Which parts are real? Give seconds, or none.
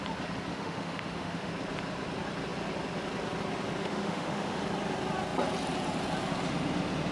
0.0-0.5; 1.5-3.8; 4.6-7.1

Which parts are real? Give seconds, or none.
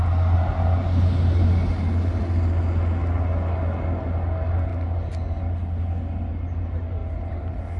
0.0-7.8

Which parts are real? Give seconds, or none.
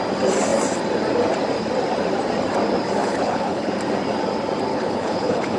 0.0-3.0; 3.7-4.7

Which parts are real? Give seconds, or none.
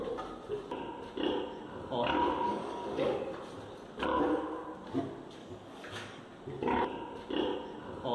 0.0-2.5; 3.2-5.4; 6.2-8.1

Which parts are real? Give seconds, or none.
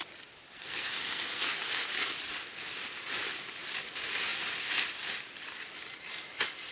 0.0-0.5; 1.9-6.7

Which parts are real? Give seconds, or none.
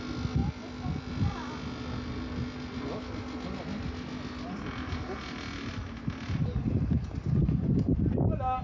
0.0-0.4; 1.1-8.6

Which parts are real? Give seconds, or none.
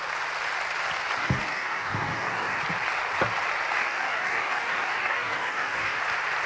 0.0-1.2; 2.6-3.8; 6.0-6.5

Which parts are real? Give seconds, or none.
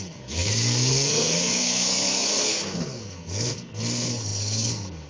none